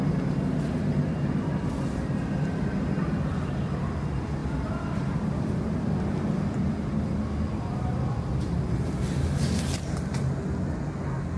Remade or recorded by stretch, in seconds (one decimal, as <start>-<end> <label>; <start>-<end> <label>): 0.0-11.4 recorded